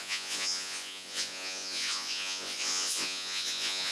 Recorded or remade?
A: remade